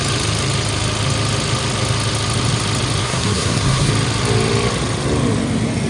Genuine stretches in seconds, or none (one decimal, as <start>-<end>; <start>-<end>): 0.0-3.0; 3.9-5.9